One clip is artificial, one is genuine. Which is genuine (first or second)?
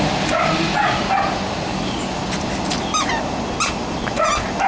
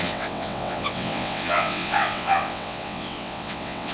first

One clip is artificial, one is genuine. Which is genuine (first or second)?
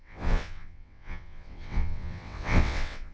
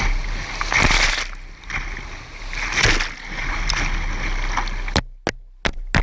second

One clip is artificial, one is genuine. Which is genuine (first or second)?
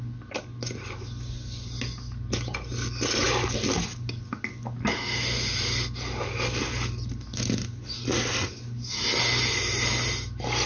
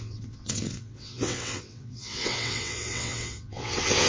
first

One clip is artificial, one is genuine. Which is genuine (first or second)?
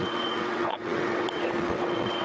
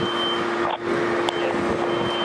second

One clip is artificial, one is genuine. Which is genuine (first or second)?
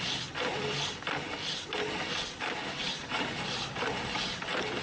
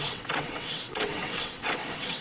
first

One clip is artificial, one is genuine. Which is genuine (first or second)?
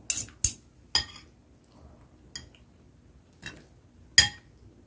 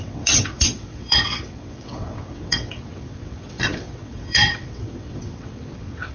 first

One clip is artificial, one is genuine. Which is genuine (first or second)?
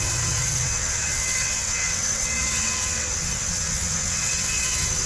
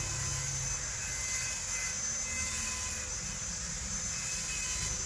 second